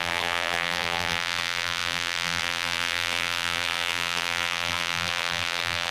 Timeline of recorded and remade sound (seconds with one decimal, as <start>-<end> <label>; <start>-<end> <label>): 0.0-5.9 remade